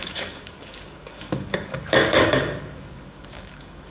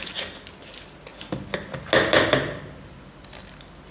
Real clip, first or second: second